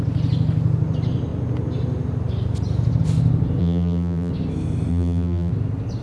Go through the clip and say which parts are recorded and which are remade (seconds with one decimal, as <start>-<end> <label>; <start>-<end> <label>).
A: 0.0-3.6 recorded; 3.6-4.3 remade; 4.3-4.9 recorded; 4.9-5.5 remade; 5.5-6.0 recorded